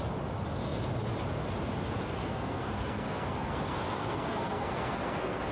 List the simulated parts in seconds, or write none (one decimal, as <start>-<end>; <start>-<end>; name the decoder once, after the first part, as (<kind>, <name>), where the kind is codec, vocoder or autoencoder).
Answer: 2.2-5.5 (codec, SNAC)